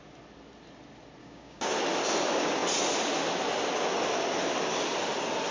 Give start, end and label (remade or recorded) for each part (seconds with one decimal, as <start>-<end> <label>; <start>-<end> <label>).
0.0-1.2 recorded; 1.2-1.7 remade; 1.7-5.5 recorded